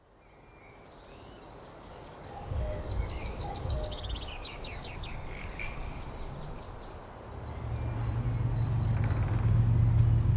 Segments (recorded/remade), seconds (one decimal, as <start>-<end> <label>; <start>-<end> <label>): 0.0-1.1 recorded; 1.1-6.0 remade; 6.0-8.5 recorded; 8.5-9.5 remade; 9.5-10.4 recorded